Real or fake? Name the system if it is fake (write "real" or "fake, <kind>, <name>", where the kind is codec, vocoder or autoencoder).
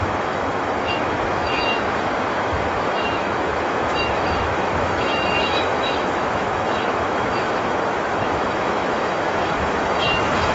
fake, autoencoder, DAC-VAE